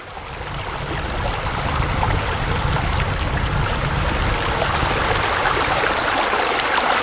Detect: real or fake real